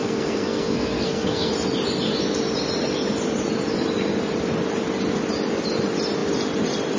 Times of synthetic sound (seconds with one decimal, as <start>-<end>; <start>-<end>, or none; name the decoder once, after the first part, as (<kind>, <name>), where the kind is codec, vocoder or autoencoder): 0.0-1.5 (codec, SNAC)